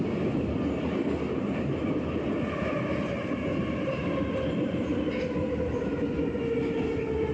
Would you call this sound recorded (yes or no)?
yes